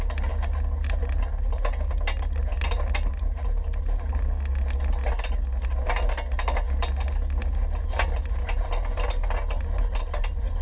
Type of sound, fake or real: real